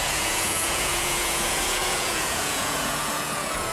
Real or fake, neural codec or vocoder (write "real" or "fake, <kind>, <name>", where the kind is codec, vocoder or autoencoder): fake, vocoder, Vocos